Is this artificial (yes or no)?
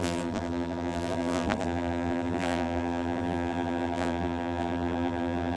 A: yes